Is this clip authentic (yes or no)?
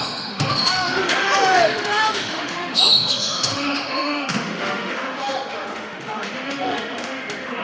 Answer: no